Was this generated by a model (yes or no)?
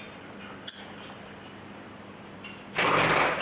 no